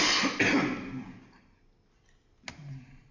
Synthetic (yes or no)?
no